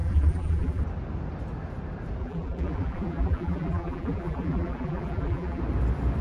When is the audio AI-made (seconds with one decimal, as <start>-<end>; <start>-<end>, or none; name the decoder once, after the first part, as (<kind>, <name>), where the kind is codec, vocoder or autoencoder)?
0.0-0.8 (vocoder, BigVGAN v2); 2.2-5.6